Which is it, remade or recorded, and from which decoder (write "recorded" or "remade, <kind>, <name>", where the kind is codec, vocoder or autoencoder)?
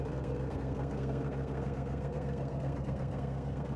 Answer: remade, codec, SNAC